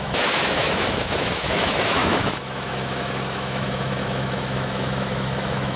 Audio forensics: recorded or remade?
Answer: remade